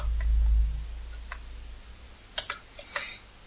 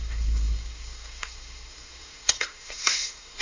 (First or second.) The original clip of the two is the first